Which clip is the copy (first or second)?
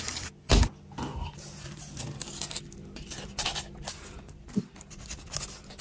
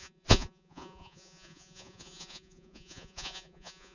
second